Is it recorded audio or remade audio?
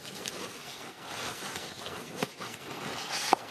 remade